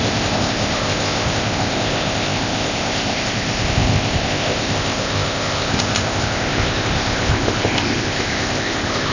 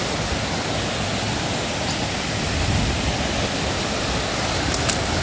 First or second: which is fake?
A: first